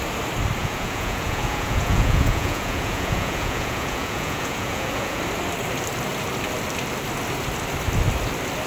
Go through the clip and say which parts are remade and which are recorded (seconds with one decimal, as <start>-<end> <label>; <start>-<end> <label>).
0.0-0.6 recorded; 0.6-5.2 remade; 5.2-8.7 recorded

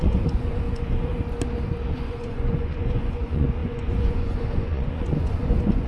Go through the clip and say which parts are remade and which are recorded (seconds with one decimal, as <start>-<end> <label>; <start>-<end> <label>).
0.0-1.1 remade; 1.1-1.9 recorded; 1.9-5.9 remade

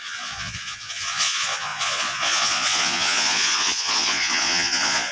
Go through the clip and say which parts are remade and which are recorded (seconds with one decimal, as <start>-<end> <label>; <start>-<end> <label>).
0.0-5.1 remade

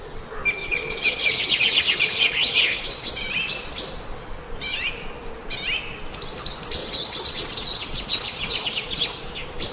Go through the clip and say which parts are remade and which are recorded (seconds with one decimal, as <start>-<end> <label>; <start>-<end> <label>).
0.0-0.6 recorded; 0.6-3.1 remade; 3.1-6.8 recorded; 6.8-9.0 remade; 9.0-9.7 recorded

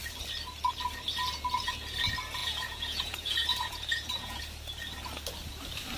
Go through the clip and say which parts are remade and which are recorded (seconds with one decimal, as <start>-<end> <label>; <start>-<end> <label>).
0.0-2.4 recorded; 2.4-4.4 remade; 4.4-6.0 recorded